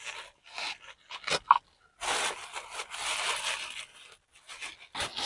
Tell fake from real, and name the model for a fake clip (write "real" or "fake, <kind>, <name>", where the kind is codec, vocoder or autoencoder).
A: real